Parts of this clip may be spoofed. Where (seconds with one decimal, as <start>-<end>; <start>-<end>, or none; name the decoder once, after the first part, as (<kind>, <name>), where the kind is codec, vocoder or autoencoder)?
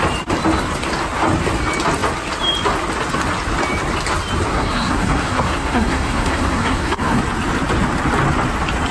4.5-7.2 (codec, SNAC)